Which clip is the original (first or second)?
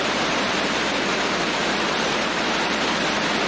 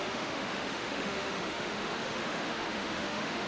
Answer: first